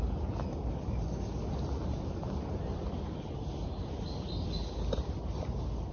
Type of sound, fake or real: real